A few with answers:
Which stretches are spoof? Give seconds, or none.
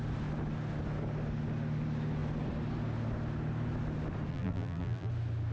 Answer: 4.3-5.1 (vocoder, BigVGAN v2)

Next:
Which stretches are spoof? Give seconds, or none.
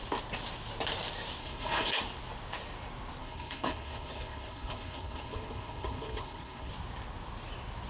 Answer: 1.4-2.0 (codec, HILCodec); 3.2-6.7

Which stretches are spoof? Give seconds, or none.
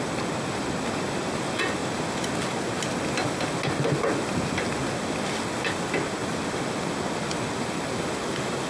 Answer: 6.2-6.9 (vocoder, BigVGAN v2)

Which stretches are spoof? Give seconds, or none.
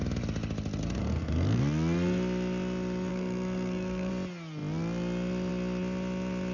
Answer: 1.0-1.6 (codec, SNAC); 3.1-4.1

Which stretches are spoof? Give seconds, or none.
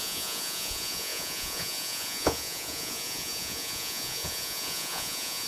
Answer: 0.0-5.5 (vocoder, Vocos)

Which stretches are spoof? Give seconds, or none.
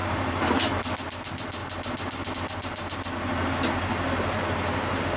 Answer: 0.0-0.7 (vocoder, BigVGAN v2); 1.6-2.3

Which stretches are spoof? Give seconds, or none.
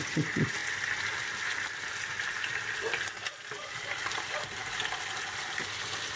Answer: 0.0-0.6 (vocoder, BigVGAN v2); 3.9-4.6; 5.4-6.2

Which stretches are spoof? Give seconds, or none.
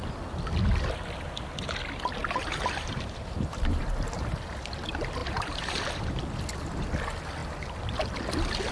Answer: 2.2-3.8 (vocoder, BigVGAN v2); 5.2-6.2